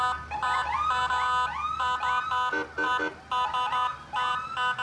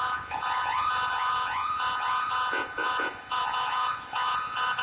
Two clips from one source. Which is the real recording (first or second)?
first